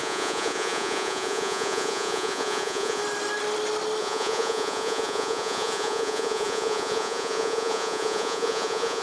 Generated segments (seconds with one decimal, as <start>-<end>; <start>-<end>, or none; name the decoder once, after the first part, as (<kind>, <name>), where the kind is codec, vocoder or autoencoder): 0.0-3.0 (vocoder, Vocos); 4.0-9.0